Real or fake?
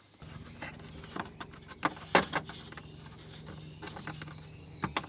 real